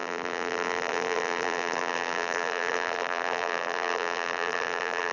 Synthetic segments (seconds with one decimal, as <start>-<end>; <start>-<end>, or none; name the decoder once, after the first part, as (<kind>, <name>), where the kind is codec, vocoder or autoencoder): 0.0-5.1 (vocoder, BigVGAN v2)